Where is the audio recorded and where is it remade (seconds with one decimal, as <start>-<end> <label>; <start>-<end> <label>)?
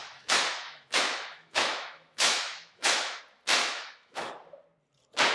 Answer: 0.0-3.2 remade; 3.2-3.6 recorded; 3.6-4.3 remade; 4.3-5.3 recorded